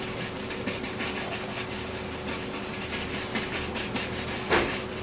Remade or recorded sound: recorded